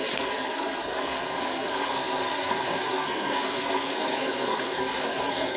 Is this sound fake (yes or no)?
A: yes